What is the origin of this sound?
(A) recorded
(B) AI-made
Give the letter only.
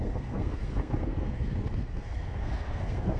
B